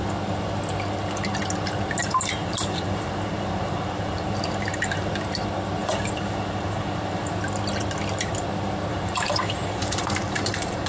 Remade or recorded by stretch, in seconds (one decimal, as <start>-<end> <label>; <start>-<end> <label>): 0.0-2.0 recorded; 2.0-5.1 remade; 5.1-5.8 recorded; 5.8-7.4 remade; 7.4-8.9 recorded; 8.9-10.9 remade